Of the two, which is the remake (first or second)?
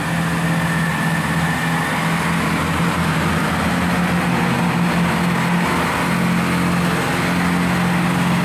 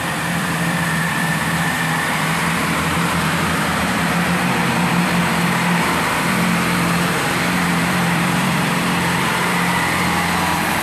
second